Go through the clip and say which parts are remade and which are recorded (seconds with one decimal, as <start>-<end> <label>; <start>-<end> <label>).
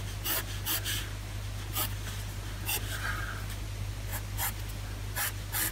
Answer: 0.0-5.7 recorded